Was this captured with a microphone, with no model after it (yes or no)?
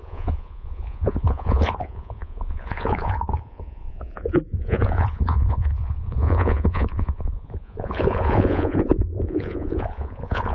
no